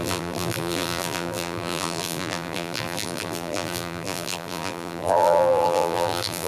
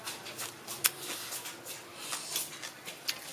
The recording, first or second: second